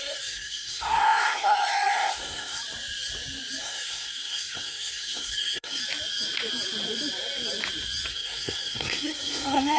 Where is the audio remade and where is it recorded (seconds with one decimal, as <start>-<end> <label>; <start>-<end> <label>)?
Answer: 0.0-2.6 remade; 2.6-3.6 recorded; 3.6-5.8 remade; 5.8-8.1 recorded; 8.1-9.8 remade